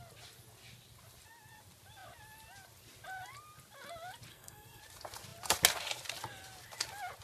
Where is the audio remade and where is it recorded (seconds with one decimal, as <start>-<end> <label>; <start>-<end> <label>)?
0.0-4.3 recorded; 4.3-4.8 remade; 4.8-7.2 recorded